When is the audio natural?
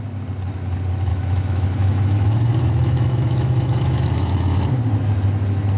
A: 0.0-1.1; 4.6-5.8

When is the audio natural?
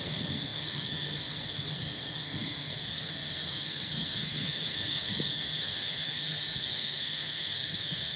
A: none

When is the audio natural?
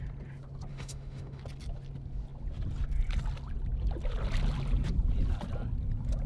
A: 0.0-0.7; 1.4-6.3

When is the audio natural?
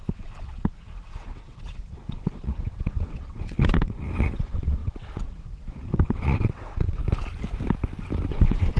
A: 7.0-8.3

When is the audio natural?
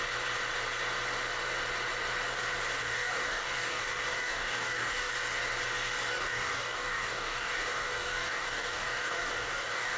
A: 0.0-2.8; 5.1-6.1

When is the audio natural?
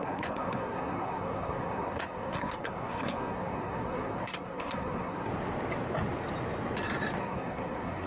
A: 5.3-7.2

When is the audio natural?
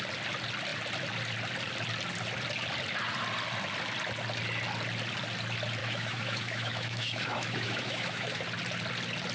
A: 0.0-5.8; 8.4-9.3